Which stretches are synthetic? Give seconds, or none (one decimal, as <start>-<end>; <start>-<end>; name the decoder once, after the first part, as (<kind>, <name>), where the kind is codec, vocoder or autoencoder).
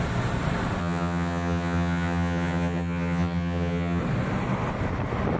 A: 0.8-4.0 (vocoder, HiFi-GAN)